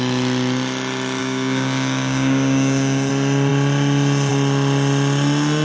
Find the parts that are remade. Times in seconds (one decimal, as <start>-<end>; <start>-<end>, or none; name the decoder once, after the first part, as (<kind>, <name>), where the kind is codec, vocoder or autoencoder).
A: 1.2-3.1 (codec, DAC)